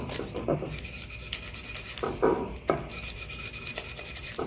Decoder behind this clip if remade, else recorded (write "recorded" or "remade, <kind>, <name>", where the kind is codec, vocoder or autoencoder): recorded